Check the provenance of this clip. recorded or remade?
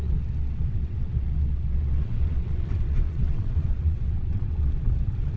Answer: remade